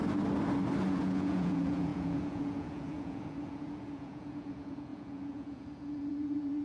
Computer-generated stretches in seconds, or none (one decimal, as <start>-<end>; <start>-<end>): 0.9-6.6